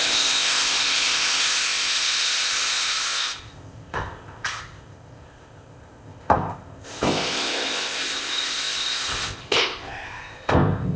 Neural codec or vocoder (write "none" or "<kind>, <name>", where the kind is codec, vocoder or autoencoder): codec, ZipCodec